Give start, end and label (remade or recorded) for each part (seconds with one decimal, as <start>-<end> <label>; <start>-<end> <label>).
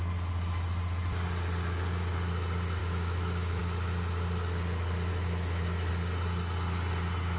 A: 0.0-2.8 recorded; 2.8-3.6 remade; 3.6-5.1 recorded; 5.1-5.9 remade; 5.9-7.4 recorded